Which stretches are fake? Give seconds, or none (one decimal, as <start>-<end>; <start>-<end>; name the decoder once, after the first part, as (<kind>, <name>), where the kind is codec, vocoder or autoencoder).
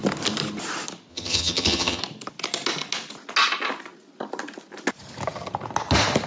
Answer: 1.1-2.0 (vocoder, HiFi-GAN)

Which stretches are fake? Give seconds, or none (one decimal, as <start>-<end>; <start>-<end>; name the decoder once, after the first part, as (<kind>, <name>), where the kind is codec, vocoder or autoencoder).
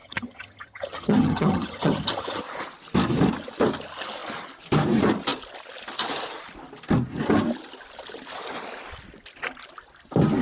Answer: 0.0-2.4 (vocoder, HiFi-GAN)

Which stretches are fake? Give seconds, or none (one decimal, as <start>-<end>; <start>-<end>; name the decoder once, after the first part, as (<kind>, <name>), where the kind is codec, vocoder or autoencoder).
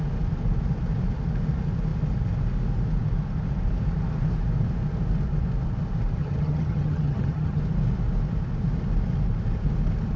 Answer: 6.2-7.6 (vocoder, HiFi-GAN)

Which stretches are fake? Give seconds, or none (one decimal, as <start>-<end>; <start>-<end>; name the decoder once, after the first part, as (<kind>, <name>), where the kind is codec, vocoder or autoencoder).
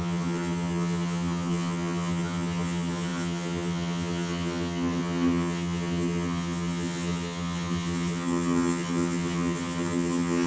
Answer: 0.0-10.5 (vocoder, HiFi-GAN)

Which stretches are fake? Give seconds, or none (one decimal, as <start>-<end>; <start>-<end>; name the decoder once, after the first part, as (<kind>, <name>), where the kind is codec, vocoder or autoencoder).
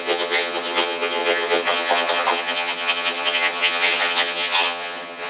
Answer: 0.0-5.3 (vocoder, HiFi-GAN)